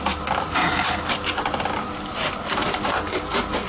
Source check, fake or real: real